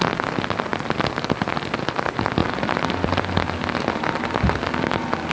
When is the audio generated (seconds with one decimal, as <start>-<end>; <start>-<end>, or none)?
none